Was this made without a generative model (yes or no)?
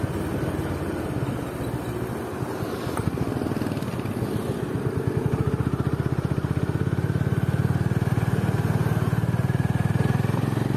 yes